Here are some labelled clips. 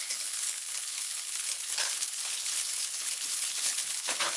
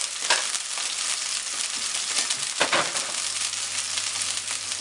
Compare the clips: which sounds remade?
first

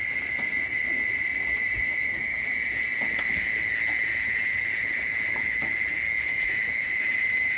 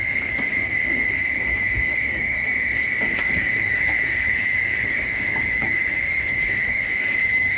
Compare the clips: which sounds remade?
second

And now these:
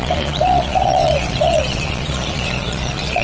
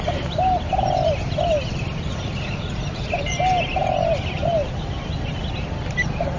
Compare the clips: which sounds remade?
first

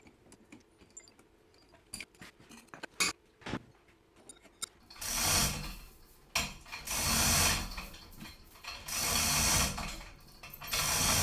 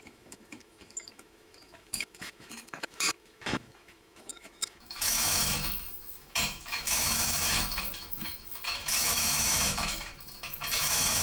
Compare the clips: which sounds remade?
second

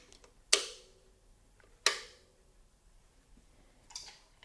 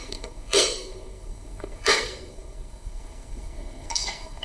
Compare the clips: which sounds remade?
second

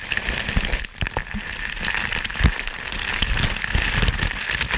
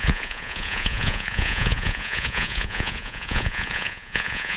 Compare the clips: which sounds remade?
second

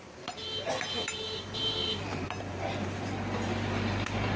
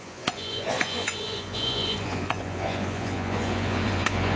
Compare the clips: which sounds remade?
second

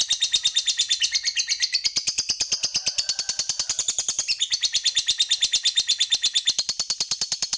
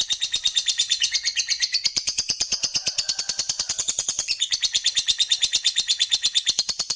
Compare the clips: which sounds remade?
second